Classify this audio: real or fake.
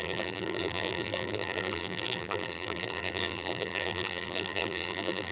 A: fake